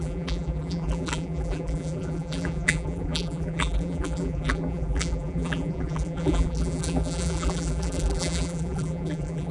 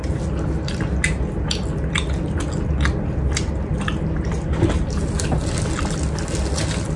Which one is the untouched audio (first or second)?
second